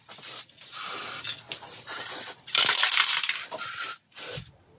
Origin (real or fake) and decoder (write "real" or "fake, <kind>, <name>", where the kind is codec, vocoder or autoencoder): real